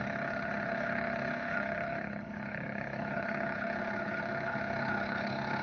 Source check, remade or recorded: remade